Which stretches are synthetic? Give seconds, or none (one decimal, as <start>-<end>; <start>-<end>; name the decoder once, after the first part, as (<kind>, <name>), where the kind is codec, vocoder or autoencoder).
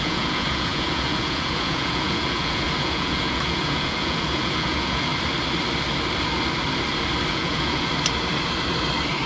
0.0-5.1 (vocoder, Vocos); 7.3-7.9